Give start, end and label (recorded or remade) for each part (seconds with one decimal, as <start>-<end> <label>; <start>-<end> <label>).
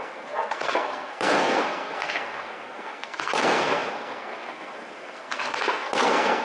0.0-6.4 remade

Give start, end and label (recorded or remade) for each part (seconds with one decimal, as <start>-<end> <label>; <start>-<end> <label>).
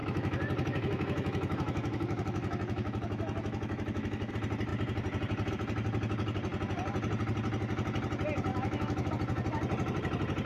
0.0-4.3 remade; 4.3-8.5 recorded; 8.5-9.1 remade; 9.1-10.5 recorded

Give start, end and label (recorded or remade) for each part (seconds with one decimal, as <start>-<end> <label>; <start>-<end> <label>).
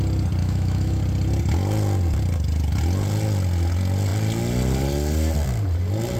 0.0-0.4 recorded; 0.4-1.0 remade; 1.0-6.2 recorded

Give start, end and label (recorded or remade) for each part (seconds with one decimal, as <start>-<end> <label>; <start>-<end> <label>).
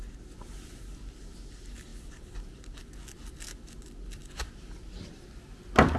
0.0-6.0 recorded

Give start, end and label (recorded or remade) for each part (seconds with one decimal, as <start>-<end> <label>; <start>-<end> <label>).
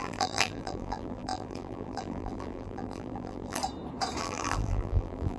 0.0-3.6 remade; 3.6-4.2 recorded; 4.2-5.4 remade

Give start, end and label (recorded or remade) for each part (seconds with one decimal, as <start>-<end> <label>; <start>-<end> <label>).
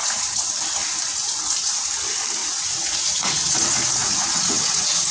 0.0-0.5 remade; 0.5-1.1 recorded; 1.1-1.9 remade; 1.9-2.4 recorded; 2.4-5.1 remade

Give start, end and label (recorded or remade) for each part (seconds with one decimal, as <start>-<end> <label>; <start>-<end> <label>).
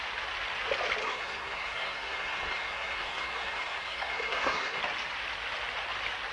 0.0-1.0 recorded; 1.0-4.8 remade; 4.8-6.3 recorded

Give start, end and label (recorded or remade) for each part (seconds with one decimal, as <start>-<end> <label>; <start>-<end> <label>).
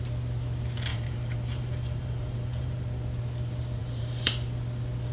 0.0-0.9 recorded; 0.9-2.8 remade; 2.8-3.8 recorded; 3.8-4.3 remade; 4.3-5.1 recorded